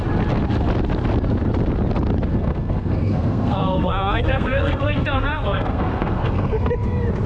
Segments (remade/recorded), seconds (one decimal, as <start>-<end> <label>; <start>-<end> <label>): 0.0-2.3 recorded; 2.3-6.7 remade; 6.7-7.3 recorded